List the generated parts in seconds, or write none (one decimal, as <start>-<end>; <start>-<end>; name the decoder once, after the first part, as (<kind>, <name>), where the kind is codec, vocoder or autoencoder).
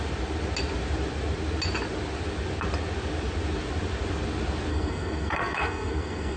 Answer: 4.7-6.4 (codec, SNAC)